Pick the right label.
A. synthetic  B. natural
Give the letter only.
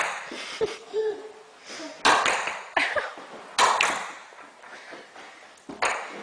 B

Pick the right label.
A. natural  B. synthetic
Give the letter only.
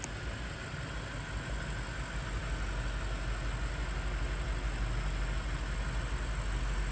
A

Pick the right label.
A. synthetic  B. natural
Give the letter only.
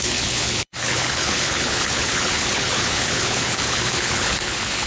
A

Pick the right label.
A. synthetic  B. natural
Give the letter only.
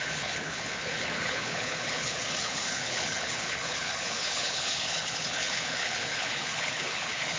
A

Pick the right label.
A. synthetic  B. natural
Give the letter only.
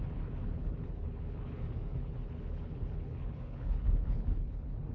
A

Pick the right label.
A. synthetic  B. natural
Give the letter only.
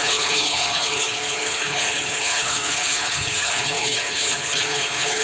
A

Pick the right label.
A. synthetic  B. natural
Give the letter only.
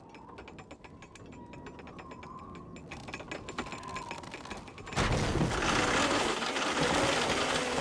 B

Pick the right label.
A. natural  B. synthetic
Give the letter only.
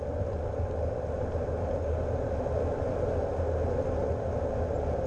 A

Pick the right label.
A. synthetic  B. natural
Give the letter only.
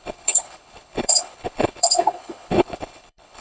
A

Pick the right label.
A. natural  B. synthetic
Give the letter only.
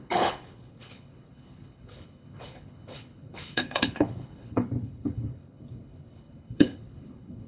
B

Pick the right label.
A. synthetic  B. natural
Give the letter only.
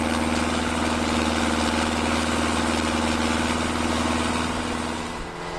B